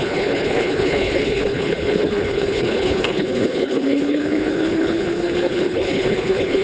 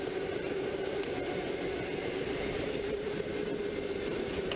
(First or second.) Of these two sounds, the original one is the second